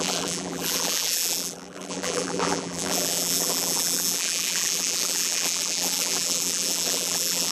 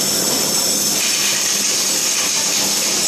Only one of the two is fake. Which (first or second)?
first